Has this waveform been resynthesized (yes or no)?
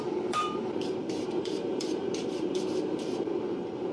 yes